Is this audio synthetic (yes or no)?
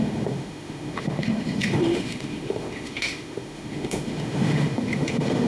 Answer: yes